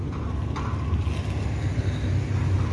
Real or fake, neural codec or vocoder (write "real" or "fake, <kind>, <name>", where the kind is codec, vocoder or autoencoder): real